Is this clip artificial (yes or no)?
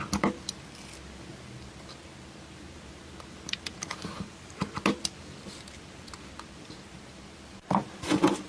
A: no